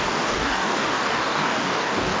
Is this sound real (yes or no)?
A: no